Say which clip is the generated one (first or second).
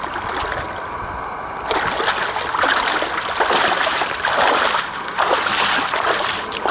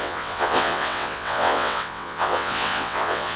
second